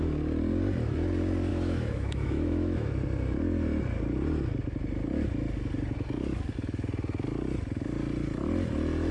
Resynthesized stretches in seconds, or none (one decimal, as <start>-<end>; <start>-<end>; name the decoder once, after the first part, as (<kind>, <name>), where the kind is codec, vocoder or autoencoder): 1.5-2.9 (autoencoder, DAC-VAE)